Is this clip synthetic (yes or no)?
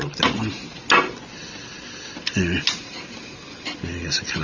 no